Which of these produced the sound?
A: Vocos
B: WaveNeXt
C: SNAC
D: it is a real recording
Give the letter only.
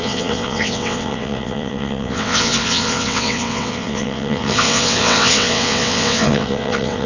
B